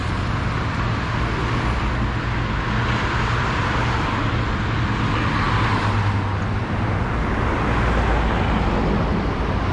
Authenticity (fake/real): real